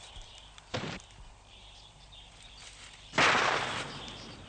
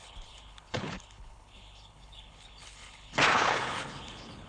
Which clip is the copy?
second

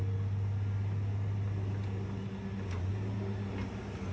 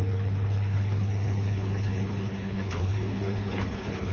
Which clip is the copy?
second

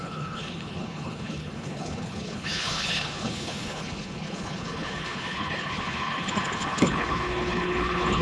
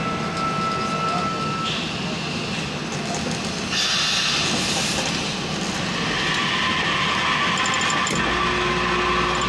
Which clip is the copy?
first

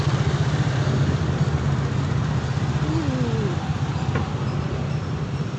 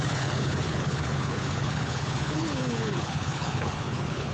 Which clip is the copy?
second